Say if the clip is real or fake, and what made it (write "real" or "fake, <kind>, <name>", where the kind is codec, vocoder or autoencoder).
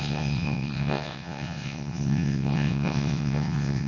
fake, vocoder, WaveNeXt